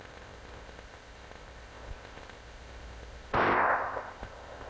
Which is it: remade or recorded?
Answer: remade